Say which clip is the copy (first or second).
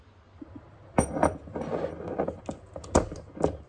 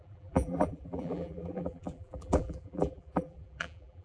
second